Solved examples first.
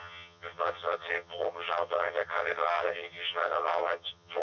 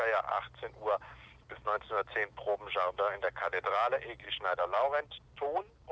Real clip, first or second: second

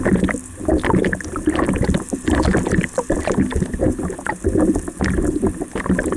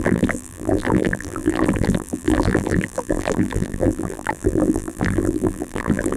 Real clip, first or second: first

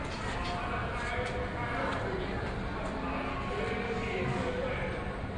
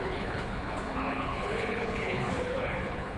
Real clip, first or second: first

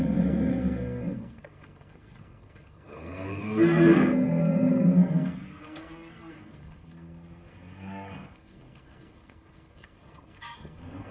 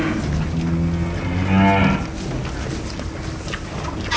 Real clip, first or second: second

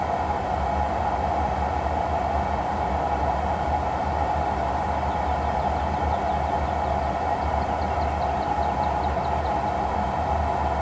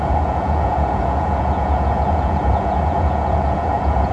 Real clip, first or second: first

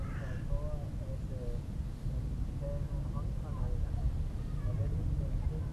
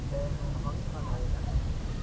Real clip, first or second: first